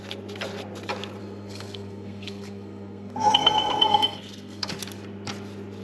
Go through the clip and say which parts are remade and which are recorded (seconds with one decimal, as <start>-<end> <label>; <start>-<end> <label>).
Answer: 0.0-1.2 recorded; 1.2-4.7 remade; 4.7-5.8 recorded